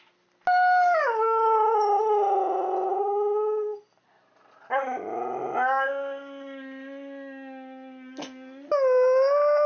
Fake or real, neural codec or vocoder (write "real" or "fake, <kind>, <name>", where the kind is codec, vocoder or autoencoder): real